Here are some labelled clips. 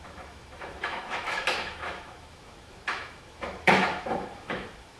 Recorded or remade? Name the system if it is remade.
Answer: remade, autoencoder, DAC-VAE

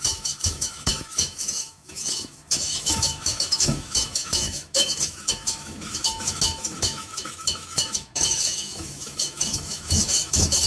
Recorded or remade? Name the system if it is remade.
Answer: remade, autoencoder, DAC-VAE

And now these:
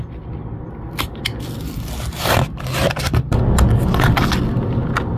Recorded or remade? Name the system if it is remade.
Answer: recorded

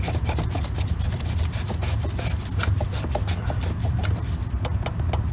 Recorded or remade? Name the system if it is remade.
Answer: recorded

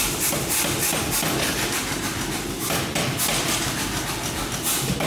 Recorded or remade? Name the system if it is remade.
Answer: recorded